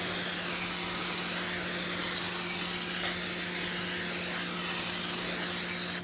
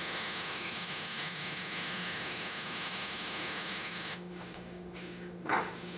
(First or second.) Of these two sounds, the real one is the first